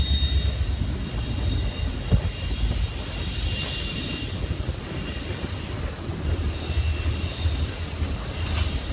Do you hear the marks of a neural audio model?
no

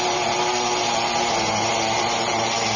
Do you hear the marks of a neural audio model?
no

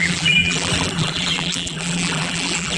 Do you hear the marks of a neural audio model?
yes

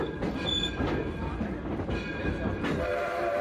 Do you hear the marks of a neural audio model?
yes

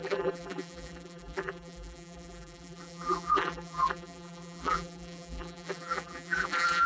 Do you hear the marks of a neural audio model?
yes